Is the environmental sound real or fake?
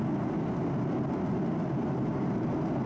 real